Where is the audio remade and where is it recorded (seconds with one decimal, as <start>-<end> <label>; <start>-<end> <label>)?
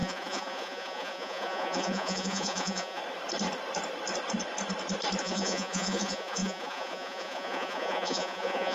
0.0-3.0 remade; 3.0-5.2 recorded; 5.2-8.7 remade